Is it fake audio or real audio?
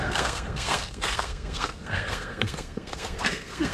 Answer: fake